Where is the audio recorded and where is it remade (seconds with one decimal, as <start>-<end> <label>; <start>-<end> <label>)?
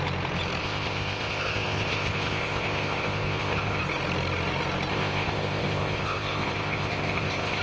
0.0-0.6 recorded; 0.6-3.8 remade; 3.8-4.9 recorded; 4.9-7.6 remade